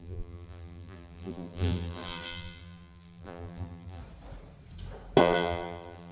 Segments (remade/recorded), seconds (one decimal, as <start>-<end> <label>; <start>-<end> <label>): 0.0-4.0 remade; 4.0-5.2 recorded; 5.2-6.1 remade